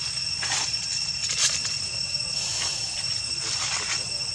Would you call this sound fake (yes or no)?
yes